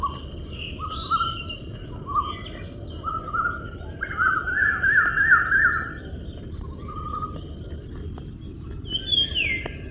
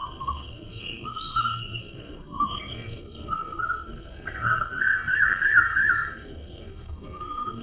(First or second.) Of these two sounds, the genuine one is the first